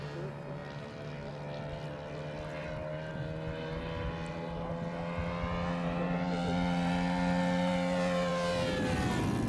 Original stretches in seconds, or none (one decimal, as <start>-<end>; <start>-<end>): 0.0-9.5